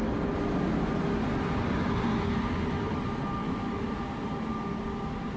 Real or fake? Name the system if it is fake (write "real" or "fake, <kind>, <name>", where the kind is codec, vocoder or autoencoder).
real